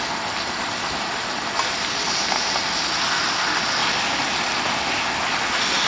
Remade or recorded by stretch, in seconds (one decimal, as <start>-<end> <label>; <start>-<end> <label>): 0.0-5.9 recorded